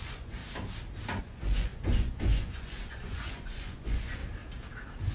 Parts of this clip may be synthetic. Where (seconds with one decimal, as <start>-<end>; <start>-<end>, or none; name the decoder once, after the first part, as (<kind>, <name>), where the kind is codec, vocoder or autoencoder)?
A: 0.0-0.4 (vocoder, Vocos); 1.2-4.2